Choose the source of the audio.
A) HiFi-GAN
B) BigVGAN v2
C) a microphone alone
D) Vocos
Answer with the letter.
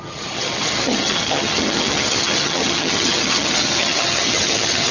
A